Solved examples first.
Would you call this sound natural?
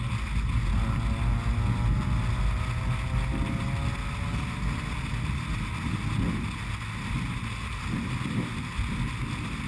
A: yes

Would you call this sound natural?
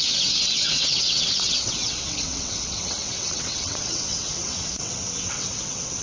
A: no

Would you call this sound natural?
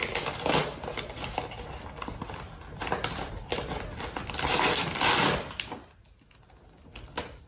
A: yes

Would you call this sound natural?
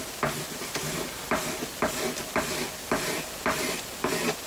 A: yes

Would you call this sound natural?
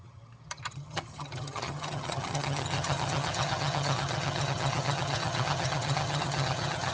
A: no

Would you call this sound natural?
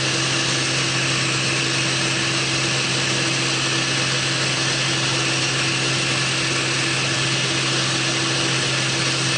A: yes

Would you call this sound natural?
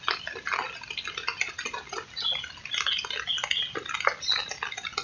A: yes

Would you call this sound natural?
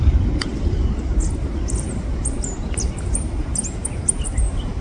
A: yes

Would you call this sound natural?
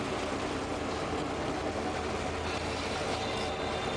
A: yes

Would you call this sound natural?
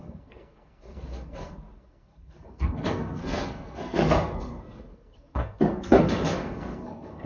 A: no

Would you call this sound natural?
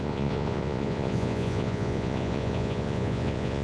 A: no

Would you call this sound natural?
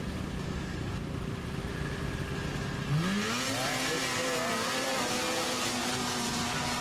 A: yes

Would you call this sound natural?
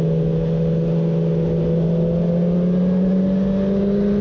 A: yes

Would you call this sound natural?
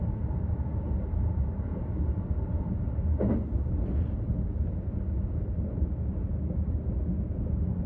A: yes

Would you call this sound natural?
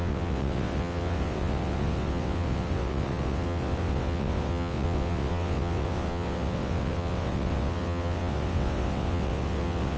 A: no